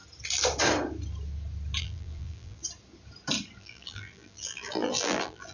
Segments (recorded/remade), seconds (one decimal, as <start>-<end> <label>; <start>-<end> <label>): 0.0-1.8 recorded; 1.8-2.6 remade; 2.6-3.6 recorded; 3.6-5.5 remade